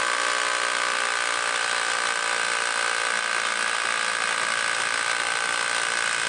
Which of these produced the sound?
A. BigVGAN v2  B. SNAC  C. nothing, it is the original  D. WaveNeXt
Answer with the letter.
C